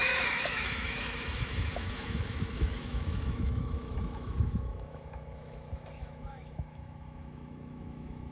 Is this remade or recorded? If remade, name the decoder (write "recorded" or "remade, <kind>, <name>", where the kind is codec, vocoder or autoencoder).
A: remade, autoencoder, DAC-VAE